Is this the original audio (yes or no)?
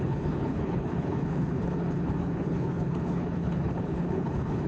no